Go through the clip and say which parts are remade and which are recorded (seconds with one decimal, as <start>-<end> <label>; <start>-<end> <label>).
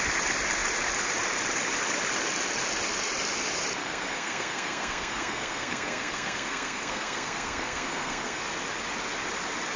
0.0-3.8 recorded; 3.8-8.4 remade; 8.4-9.8 recorded